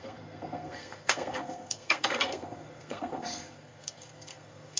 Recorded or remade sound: remade